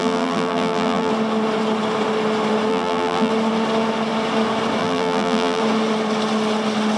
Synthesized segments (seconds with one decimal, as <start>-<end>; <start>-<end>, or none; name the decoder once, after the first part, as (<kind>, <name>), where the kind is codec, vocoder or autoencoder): 0.0-1.1 (vocoder, BigVGAN v2); 2.7-3.3; 4.8-5.6